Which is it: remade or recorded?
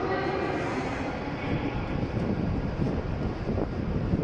recorded